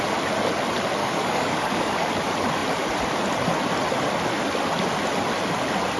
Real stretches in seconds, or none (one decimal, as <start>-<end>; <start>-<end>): 0.0-1.0; 2.1-6.0